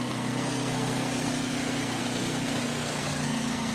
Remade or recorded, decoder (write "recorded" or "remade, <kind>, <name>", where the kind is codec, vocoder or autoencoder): remade, codec, SNAC